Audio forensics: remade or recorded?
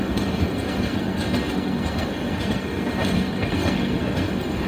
remade